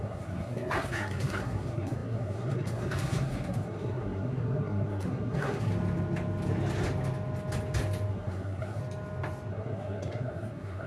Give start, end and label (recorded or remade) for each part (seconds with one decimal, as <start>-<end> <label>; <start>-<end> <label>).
0.0-5.7 remade; 5.7-8.1 recorded; 8.1-8.8 remade; 8.8-9.5 recorded; 9.5-10.9 remade